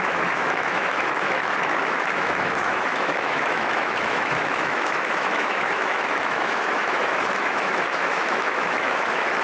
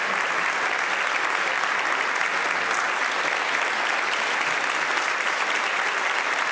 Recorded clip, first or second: second